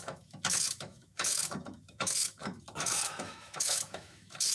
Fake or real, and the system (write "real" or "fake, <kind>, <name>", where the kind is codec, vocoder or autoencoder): fake, autoencoder, DAC-VAE